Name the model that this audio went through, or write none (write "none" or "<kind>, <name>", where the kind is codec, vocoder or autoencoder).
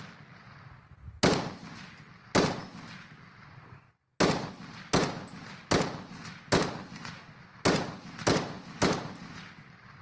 none